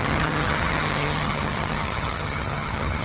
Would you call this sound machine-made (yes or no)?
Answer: yes